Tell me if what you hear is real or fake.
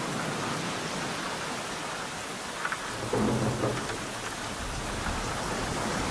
real